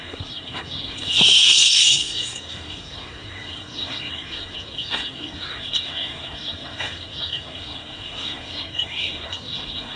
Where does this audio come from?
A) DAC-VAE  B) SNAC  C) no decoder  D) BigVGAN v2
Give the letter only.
B